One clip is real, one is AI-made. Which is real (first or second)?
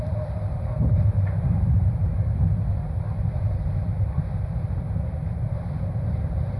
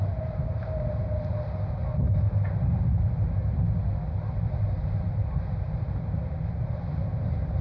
second